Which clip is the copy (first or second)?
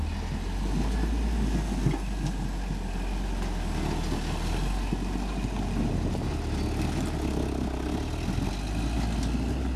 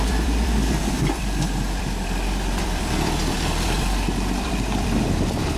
second